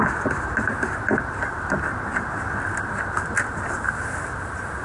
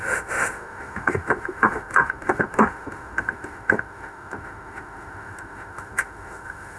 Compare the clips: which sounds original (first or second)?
first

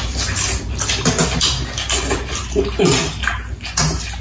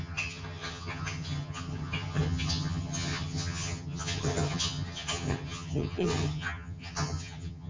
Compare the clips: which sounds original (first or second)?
first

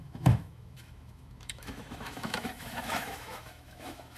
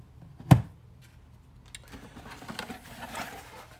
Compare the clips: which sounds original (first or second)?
second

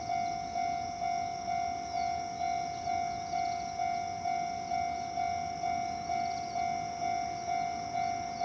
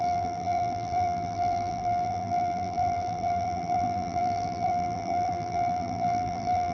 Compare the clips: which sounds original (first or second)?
first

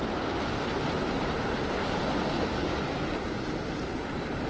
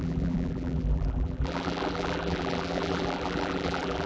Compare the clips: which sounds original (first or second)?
first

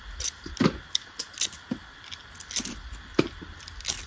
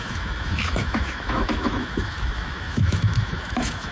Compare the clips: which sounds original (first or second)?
first